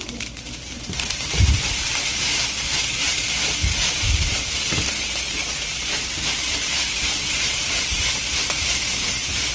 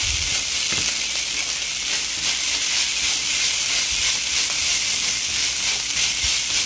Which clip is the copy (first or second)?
first